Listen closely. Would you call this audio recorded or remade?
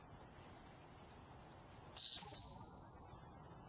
recorded